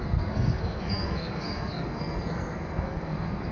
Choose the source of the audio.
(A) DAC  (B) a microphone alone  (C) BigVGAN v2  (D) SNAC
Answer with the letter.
D